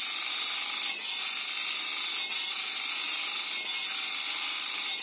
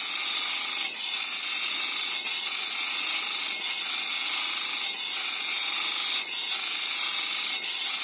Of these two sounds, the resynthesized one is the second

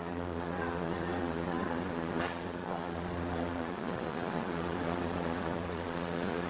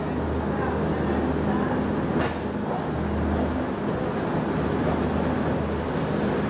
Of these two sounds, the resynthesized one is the first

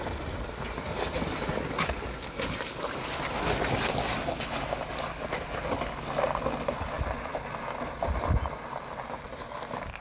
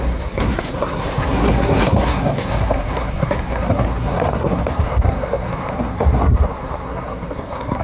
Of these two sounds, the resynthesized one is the second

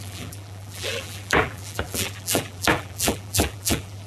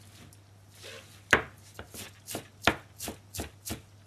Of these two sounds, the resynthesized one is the first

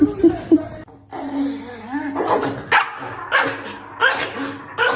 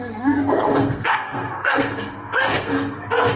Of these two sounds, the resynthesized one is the second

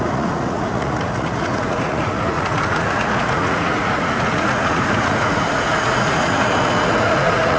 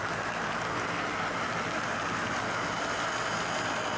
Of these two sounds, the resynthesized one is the first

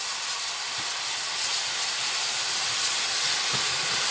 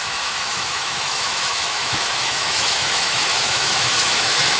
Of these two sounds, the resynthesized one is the second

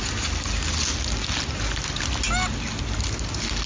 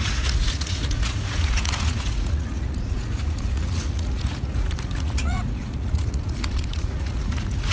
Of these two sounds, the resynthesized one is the second